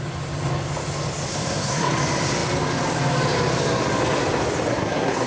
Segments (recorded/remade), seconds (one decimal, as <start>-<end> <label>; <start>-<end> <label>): 0.0-1.3 recorded; 1.3-1.9 remade; 1.9-4.7 recorded; 4.7-5.3 remade